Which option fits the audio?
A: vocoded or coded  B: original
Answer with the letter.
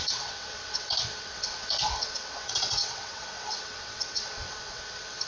A